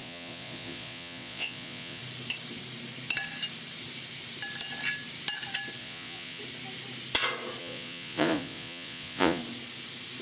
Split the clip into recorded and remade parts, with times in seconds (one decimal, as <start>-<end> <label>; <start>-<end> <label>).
0.0-2.0 remade; 2.0-5.8 recorded; 5.8-6.4 remade; 6.4-7.6 recorded; 7.6-9.4 remade; 9.4-10.2 recorded